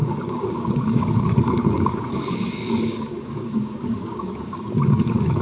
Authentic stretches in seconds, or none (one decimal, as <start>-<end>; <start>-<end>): none